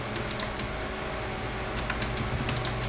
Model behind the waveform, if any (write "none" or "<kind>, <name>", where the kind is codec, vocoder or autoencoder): none